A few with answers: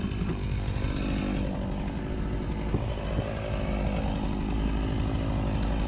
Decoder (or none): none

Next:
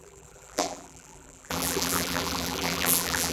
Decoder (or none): vocoder, BigVGAN v2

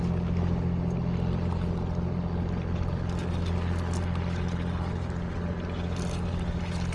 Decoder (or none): none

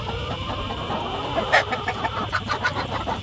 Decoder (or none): vocoder, BigVGAN v2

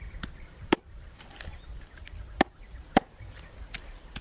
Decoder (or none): vocoder, BigVGAN v2